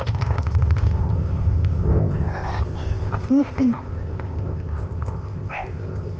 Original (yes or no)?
no